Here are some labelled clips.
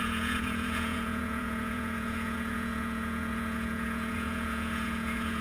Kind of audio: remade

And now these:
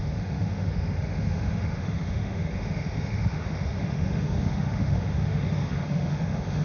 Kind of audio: remade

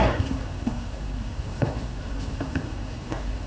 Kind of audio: remade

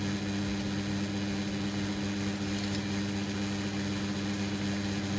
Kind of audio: recorded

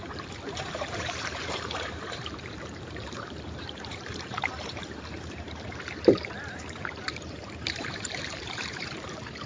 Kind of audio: remade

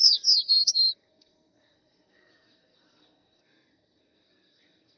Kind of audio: remade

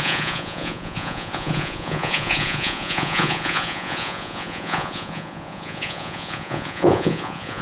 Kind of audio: remade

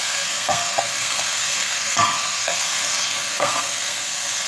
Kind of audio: remade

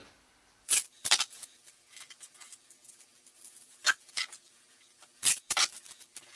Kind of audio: remade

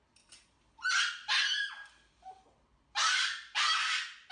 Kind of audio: remade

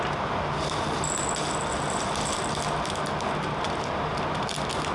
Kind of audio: recorded